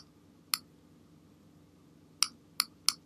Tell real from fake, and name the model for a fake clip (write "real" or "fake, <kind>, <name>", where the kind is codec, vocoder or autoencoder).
real